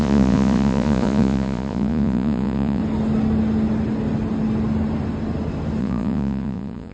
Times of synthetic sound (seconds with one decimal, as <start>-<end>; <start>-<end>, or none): 0.0-2.8; 5.8-6.9